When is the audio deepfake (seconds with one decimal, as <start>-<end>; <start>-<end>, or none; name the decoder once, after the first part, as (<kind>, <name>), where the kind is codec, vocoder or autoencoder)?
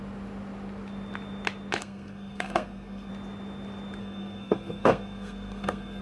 1.8-3.1 (codec, SNAC); 4.0-6.0